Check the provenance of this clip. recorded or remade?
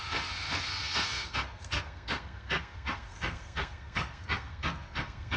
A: remade